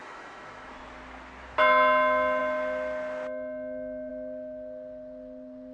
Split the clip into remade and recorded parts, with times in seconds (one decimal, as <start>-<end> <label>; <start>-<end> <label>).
0.0-0.7 remade; 0.7-5.7 recorded